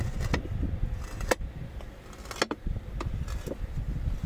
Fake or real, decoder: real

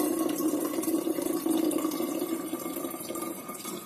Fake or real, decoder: fake, vocoder, BigVGAN v2